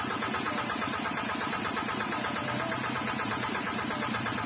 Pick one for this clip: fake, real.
fake